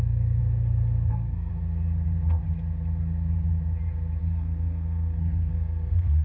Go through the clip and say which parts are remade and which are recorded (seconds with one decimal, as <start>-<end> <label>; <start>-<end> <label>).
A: 0.0-0.4 remade; 0.4-1.1 recorded; 1.1-1.5 remade; 1.5-4.2 recorded; 4.2-6.2 remade